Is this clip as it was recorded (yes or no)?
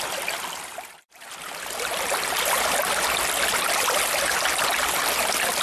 yes